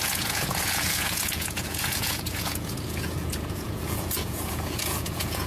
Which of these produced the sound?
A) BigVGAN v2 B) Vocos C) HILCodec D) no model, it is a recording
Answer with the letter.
B